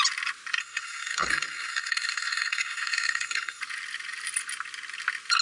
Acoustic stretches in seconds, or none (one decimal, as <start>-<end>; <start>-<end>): 0.0-0.6; 3.6-5.4